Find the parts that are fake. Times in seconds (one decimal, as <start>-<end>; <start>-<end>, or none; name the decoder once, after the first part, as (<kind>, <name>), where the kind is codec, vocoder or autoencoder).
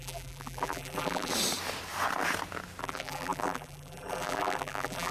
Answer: 0.0-1.3 (vocoder, BigVGAN v2); 2.8-5.1